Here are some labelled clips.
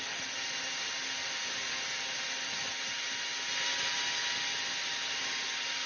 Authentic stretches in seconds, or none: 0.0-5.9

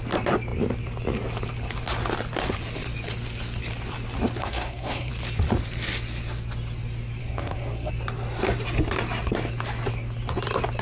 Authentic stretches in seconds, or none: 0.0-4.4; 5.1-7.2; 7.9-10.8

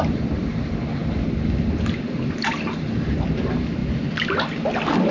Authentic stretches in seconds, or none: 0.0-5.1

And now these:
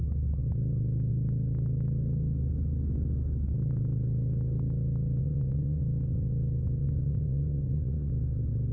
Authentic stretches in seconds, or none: 0.0-5.2; 5.8-6.8; 8.1-8.7